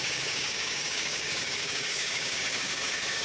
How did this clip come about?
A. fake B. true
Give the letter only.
A